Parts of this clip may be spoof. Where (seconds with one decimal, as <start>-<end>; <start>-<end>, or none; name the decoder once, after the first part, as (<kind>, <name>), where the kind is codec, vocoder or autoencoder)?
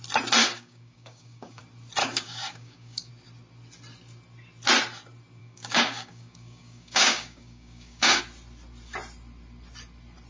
0.4-1.6 (codec, DAC); 2.0-3.1; 5.4-8.2